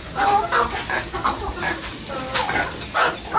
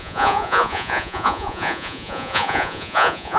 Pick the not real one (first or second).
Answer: second